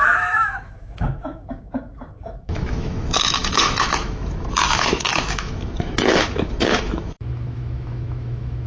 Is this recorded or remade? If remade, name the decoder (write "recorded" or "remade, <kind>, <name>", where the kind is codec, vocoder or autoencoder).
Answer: remade, autoencoder, DAC-VAE